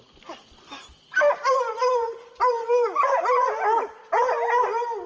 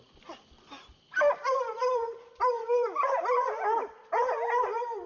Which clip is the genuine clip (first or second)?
first